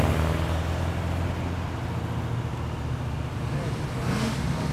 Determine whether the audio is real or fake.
real